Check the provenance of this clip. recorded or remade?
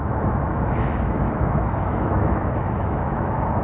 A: remade